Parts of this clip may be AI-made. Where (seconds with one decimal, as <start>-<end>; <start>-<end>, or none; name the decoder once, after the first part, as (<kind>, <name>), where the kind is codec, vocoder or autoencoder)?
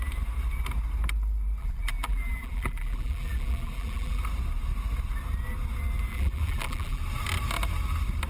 1.6-4.2 (vocoder, BigVGAN v2); 6.1-7.0